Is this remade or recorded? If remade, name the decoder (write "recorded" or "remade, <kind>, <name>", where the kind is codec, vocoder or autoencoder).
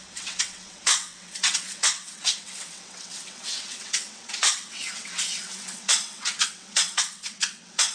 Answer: remade, vocoder, WaveNeXt